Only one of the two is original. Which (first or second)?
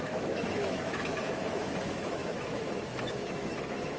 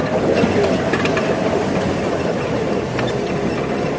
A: second